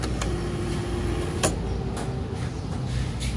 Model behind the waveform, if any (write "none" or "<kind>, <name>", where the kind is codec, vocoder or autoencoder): none